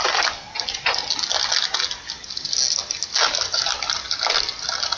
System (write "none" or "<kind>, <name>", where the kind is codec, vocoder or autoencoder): none